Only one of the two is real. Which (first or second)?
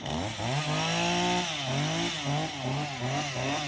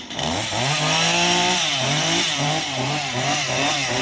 first